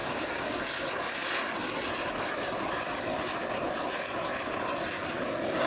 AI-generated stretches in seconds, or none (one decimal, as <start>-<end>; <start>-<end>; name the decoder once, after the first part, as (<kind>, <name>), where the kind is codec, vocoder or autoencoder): 0.0-0.6 (codec, DAC)